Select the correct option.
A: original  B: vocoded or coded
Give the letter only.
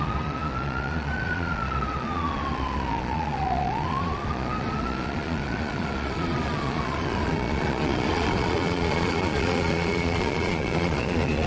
B